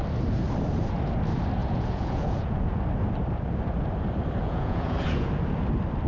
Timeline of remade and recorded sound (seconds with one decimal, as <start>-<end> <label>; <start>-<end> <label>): 0.0-1.6 recorded; 1.6-2.8 remade; 2.8-4.4 recorded; 4.4-5.3 remade; 5.3-6.1 recorded